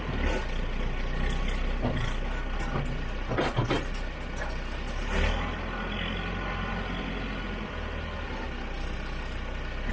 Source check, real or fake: real